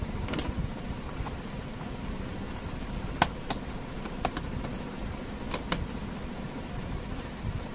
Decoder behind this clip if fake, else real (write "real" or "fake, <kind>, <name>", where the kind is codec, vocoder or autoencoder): real